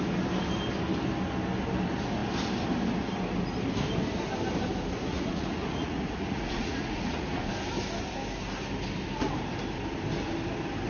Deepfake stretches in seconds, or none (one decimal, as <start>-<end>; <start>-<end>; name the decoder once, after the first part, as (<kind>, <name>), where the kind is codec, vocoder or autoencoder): 5.1-7.5 (vocoder, Vocos)